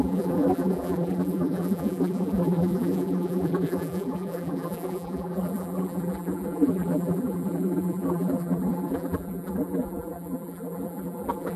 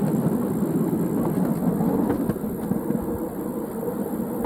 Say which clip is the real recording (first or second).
second